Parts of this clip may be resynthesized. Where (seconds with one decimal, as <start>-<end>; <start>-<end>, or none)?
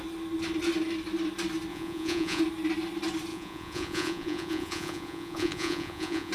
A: 1.7-2.4; 3.3-6.3